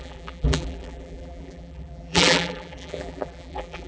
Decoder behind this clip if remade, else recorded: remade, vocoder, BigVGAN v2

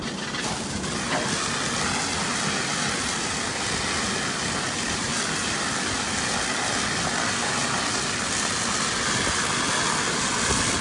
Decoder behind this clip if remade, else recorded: recorded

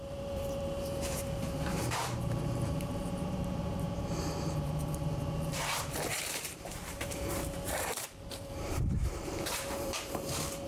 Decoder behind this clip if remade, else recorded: remade, vocoder, BigVGAN v2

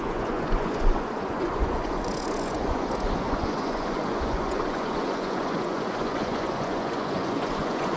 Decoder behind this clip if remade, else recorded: remade, vocoder, Vocos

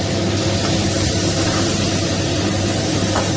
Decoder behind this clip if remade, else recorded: recorded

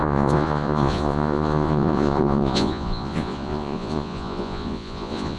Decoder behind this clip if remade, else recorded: remade, vocoder, Vocos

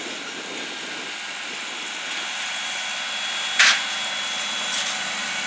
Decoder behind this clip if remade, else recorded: recorded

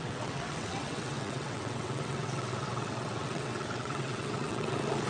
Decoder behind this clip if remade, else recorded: remade, vocoder, WaveNeXt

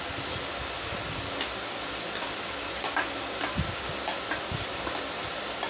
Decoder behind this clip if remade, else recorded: remade, vocoder, BigVGAN v2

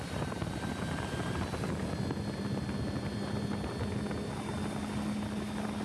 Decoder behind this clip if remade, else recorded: recorded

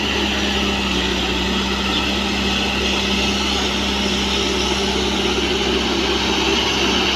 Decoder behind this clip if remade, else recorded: recorded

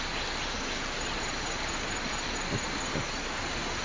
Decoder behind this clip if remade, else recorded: recorded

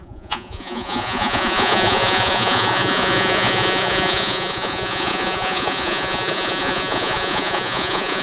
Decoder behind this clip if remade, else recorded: remade, vocoder, Vocos